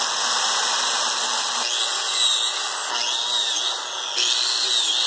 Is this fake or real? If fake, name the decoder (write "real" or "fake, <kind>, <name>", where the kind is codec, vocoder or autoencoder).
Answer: real